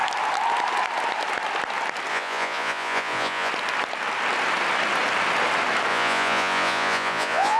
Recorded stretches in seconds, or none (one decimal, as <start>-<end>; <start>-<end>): 0.0-2.1; 3.5-5.9